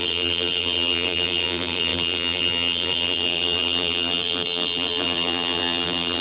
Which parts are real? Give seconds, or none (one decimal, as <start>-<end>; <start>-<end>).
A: none